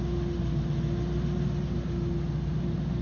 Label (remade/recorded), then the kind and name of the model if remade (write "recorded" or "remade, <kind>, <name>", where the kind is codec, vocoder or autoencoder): recorded